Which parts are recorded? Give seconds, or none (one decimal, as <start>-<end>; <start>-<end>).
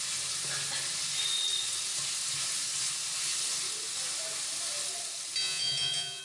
0.0-5.4